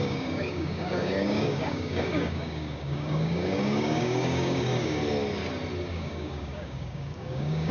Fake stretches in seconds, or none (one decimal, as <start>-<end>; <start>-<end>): 0.0-5.0; 5.9-7.7

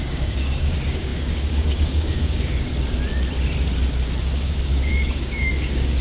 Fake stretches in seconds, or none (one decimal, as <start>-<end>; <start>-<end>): 0.0-2.7; 4.2-6.0